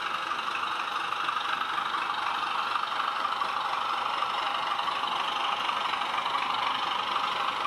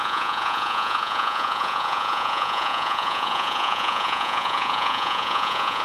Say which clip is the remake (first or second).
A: second